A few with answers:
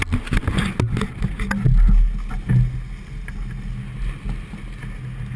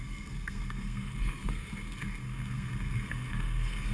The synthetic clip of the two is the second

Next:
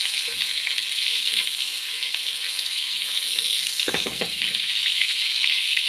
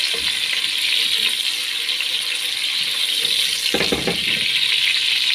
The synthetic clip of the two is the first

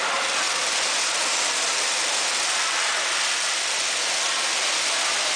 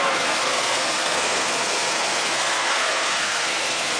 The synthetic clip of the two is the second